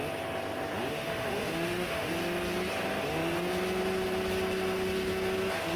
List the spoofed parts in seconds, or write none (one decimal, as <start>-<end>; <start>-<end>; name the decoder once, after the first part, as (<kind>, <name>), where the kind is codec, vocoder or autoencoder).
0.9-2.1 (autoencoder, DAC-VAE)